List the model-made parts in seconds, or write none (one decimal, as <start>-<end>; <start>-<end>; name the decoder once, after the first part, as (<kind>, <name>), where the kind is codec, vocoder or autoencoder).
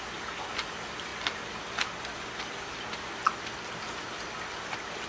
none